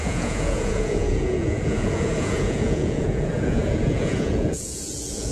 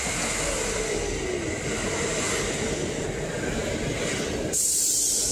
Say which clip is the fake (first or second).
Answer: first